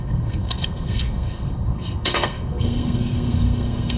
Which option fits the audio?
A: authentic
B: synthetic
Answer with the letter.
B